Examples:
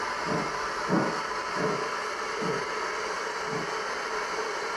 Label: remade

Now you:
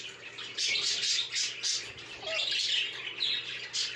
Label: recorded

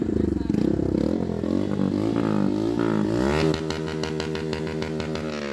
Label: recorded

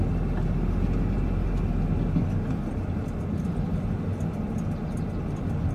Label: recorded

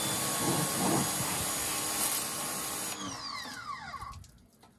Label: recorded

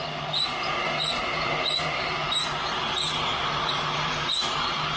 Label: recorded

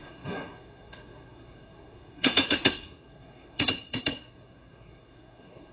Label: remade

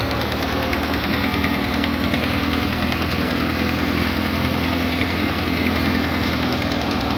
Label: remade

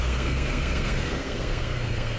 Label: remade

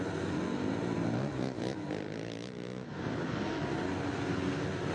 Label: recorded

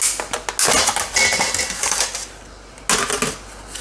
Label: recorded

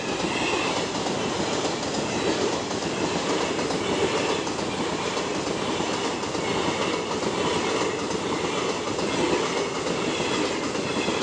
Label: recorded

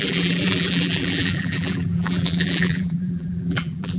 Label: remade